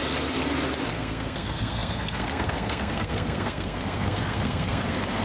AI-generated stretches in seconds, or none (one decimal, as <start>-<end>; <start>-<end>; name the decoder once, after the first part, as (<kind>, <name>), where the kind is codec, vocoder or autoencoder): 0.9-5.2 (codec, SNAC)